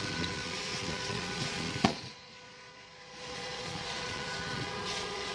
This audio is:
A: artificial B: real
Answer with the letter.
A